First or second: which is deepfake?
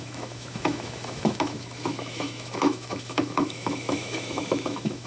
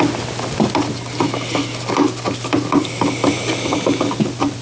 first